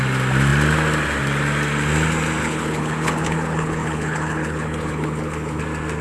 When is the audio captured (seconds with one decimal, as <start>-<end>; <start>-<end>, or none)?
0.0-2.4; 5.6-6.0